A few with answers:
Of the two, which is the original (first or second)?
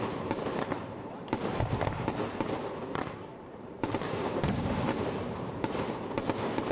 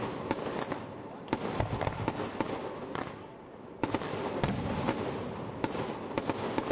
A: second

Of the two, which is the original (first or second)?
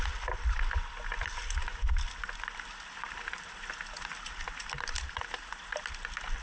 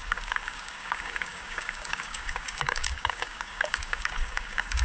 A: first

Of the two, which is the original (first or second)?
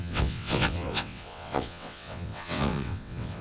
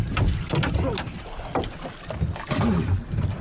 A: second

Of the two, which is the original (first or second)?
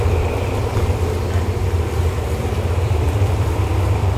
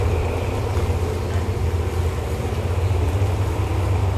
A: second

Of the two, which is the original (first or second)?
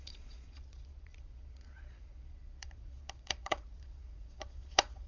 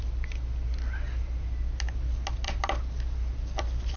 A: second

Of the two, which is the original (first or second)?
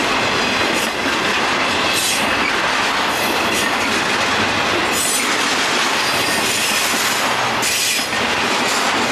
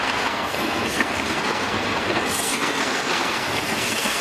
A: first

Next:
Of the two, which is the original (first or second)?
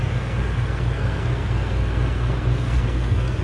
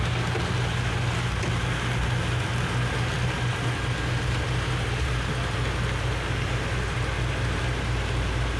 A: second